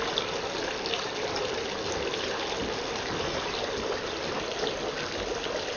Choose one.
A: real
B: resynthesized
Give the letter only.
A